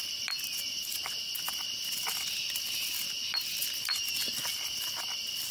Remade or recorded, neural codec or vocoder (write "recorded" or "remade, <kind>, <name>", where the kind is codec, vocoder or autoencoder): recorded